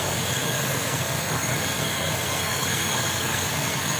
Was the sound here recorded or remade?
remade